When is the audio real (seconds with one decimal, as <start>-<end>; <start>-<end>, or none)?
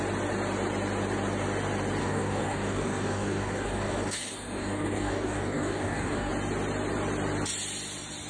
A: 0.0-2.0; 6.3-8.3